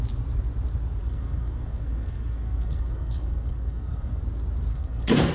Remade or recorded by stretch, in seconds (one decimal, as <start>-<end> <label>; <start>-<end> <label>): 0.0-1.0 recorded; 1.0-4.2 remade; 4.2-4.7 recorded; 4.7-5.3 remade